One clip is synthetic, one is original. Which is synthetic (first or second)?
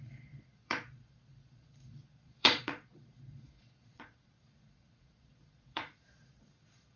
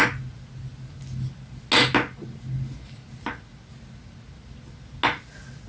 first